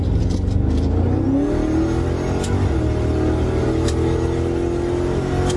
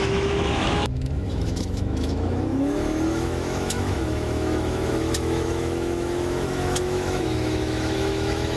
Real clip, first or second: first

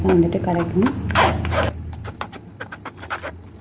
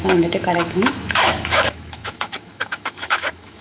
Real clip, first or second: first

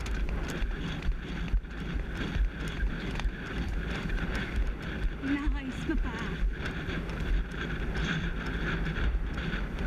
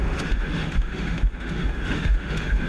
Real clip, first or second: first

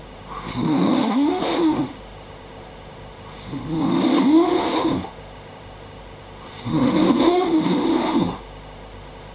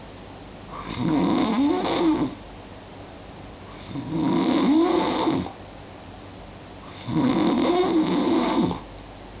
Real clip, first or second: second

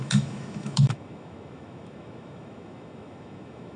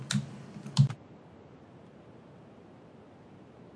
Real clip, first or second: second